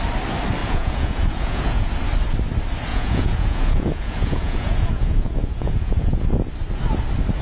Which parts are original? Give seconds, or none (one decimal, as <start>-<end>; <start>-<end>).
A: 0.0-0.6; 1.9-2.9; 6.2-7.4